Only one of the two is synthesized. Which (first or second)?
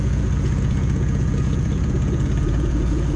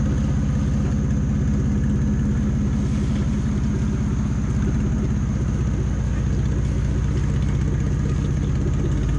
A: first